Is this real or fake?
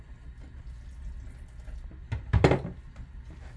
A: real